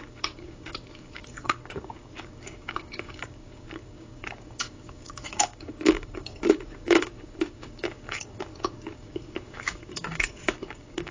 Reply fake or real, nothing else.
fake